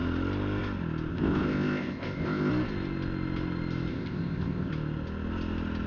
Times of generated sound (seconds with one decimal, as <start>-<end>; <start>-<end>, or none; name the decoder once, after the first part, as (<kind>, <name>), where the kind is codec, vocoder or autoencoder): 1.1-2.5 (codec, ZipCodec); 3.9-4.7